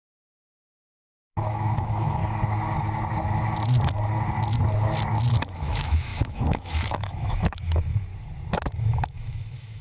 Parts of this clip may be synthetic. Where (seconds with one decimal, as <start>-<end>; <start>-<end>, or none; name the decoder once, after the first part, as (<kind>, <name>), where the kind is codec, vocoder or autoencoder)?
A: 0.0-2.2 (autoencoder, DAC-VAE); 5.3-8.1; 8.8-9.8